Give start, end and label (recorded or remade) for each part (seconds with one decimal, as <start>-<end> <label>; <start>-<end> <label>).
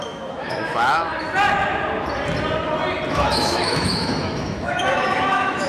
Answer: 0.0-1.1 remade; 1.1-3.1 recorded; 3.1-5.7 remade